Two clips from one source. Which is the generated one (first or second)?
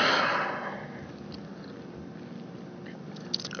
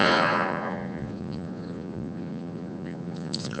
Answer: second